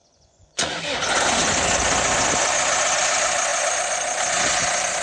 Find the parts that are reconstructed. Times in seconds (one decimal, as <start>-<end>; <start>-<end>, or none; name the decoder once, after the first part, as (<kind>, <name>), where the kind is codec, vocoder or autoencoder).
0.0-0.8 (vocoder, Vocos)